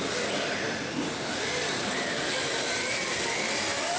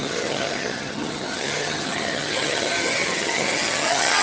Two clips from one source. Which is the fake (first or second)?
second